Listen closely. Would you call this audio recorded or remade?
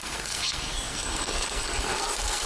remade